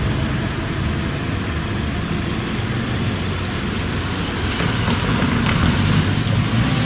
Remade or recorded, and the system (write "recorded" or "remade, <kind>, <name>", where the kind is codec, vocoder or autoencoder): recorded